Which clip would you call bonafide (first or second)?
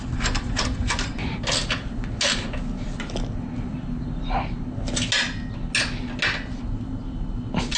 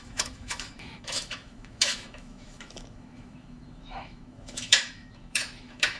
first